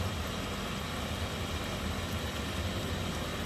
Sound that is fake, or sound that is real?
real